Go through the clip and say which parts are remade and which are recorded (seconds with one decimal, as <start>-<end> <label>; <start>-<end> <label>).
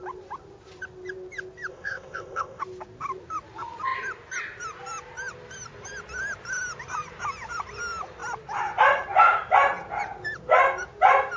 0.0-1.7 recorded; 1.7-2.6 remade; 2.6-11.4 recorded